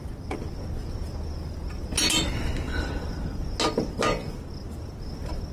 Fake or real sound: real